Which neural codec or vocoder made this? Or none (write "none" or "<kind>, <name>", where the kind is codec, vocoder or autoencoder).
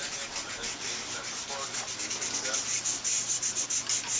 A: none